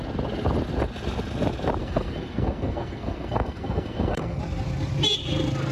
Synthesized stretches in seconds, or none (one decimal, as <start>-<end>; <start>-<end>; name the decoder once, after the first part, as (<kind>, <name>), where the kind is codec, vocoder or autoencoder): 1.8-4.4 (codec, SNAC)